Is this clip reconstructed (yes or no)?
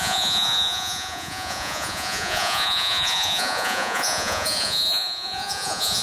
yes